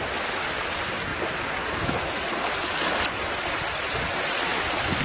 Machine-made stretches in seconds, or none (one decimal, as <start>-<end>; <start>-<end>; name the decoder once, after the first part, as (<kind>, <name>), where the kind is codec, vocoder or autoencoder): none